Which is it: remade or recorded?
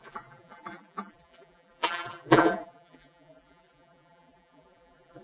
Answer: remade